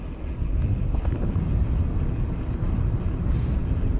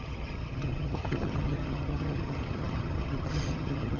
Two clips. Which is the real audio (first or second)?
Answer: first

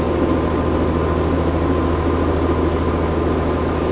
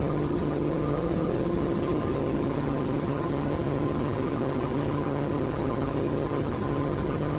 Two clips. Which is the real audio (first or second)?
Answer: first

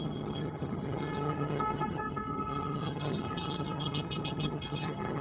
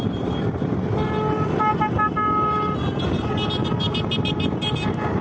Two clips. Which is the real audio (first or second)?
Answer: second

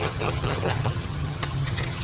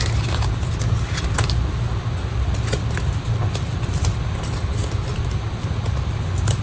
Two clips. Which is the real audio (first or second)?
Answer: second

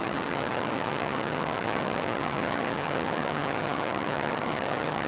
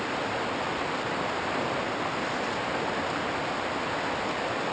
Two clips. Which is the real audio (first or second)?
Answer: second